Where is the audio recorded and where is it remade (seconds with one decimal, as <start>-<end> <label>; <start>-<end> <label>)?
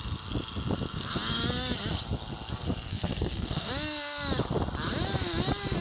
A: 0.0-2.9 recorded; 2.9-3.7 remade; 3.7-5.8 recorded